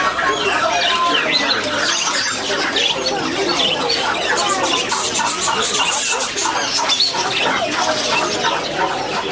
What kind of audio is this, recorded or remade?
recorded